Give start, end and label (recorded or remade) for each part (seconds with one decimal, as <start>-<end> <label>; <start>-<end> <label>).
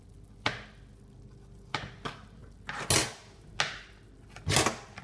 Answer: 0.0-5.0 recorded